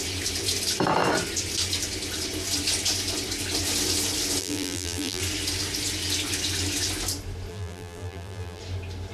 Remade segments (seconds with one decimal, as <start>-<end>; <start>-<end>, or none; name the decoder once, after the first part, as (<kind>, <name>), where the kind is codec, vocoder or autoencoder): 4.4-5.2 (vocoder, BigVGAN v2); 7.5-8.6